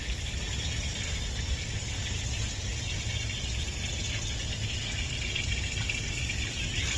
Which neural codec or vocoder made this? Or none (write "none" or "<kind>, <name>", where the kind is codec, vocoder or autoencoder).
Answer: none